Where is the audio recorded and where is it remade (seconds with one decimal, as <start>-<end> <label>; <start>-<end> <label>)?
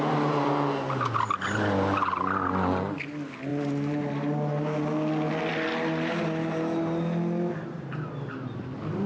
0.0-9.1 recorded